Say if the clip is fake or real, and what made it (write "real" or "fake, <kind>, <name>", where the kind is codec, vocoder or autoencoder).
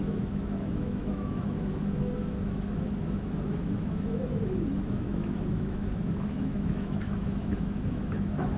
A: fake, autoencoder, DAC-VAE